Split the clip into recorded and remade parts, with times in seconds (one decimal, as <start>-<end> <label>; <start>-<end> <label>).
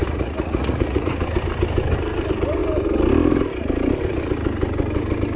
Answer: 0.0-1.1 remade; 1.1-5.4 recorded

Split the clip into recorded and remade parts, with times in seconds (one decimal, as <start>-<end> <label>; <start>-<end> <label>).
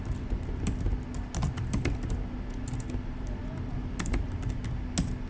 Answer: 0.0-5.3 recorded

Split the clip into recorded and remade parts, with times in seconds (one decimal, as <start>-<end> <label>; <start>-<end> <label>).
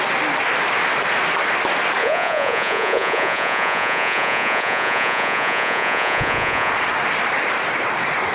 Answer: 0.0-2.0 recorded; 2.0-6.7 remade; 6.7-8.3 recorded